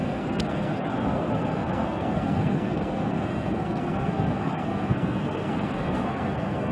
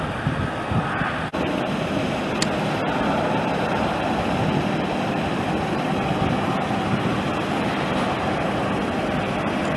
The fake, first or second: first